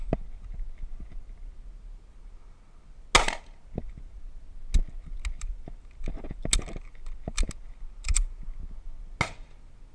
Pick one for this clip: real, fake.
real